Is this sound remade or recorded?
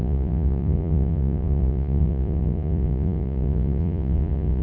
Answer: remade